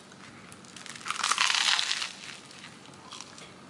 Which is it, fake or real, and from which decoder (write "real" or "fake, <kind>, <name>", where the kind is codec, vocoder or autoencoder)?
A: real